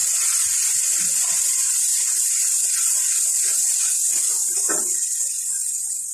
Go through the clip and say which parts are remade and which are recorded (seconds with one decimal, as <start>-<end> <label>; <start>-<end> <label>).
0.0-0.8 remade; 0.8-1.9 recorded; 1.9-2.6 remade; 2.6-4.4 recorded; 4.4-6.1 remade